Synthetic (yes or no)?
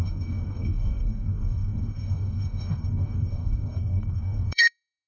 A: yes